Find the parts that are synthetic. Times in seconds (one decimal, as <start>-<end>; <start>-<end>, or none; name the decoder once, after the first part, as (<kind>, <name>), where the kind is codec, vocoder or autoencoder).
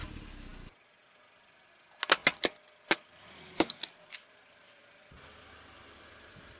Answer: none